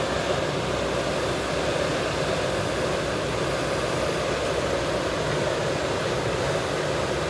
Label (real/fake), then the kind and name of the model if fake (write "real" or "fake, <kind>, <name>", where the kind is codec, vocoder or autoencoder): real